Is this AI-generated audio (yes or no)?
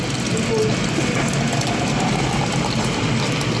no